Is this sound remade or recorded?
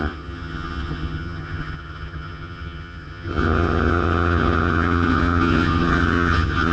remade